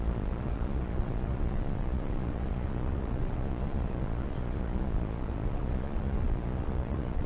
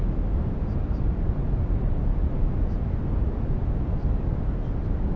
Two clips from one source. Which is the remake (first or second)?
first